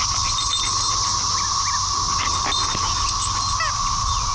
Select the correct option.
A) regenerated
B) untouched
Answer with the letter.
B